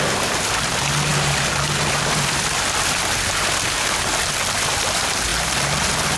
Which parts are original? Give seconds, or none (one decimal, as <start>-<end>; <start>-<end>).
0.0-6.2